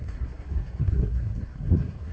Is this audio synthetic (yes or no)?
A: yes